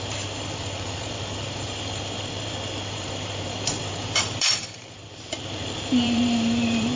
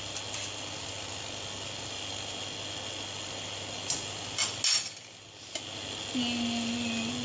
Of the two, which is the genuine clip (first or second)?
second